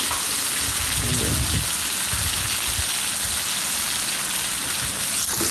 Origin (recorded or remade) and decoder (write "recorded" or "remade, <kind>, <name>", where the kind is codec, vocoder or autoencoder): recorded